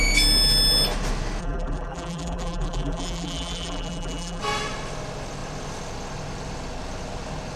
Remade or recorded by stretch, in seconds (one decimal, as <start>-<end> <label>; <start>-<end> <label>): 0.0-1.4 recorded; 1.4-4.4 remade; 4.4-7.6 recorded